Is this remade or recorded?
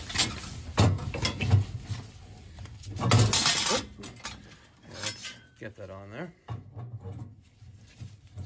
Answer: recorded